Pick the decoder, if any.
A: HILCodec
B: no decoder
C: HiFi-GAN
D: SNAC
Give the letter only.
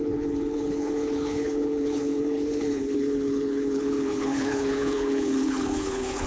A